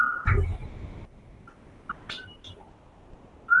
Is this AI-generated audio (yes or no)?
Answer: no